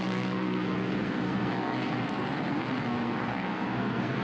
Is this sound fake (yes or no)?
yes